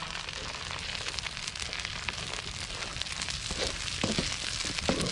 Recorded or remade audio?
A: recorded